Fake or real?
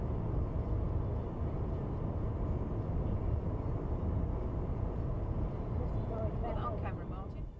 real